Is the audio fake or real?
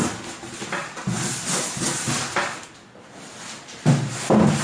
real